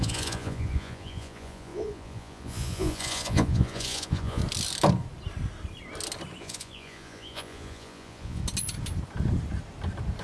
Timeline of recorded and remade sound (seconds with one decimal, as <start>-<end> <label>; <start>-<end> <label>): 0.0-4.4 remade; 4.4-6.4 recorded; 6.4-8.4 remade; 8.4-10.2 recorded